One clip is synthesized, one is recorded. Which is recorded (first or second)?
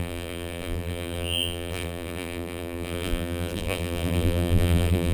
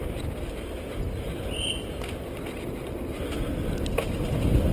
second